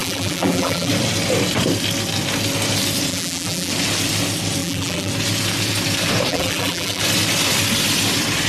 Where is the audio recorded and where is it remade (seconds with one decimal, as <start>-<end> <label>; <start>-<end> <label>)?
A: 0.0-0.9 remade; 0.9-3.1 recorded; 3.1-3.7 remade; 3.7-4.6 recorded; 4.6-5.1 remade; 5.1-6.3 recorded; 6.3-7.0 remade; 7.0-8.5 recorded